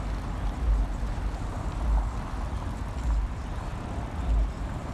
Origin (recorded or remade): recorded